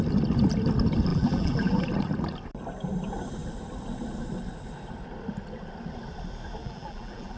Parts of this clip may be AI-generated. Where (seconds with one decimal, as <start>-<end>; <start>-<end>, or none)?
1.1-1.9; 6.6-7.4